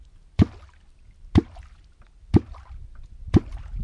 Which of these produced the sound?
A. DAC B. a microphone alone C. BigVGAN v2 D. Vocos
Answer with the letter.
B